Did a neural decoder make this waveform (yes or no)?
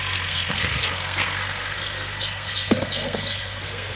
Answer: yes